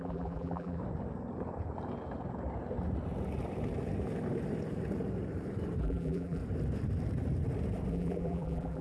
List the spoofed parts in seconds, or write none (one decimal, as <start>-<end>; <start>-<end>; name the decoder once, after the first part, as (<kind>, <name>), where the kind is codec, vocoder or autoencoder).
0.0-0.8 (vocoder, BigVGAN v2); 5.8-6.4; 7.9-8.8